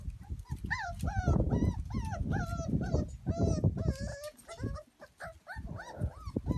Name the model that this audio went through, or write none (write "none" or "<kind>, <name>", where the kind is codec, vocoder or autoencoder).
none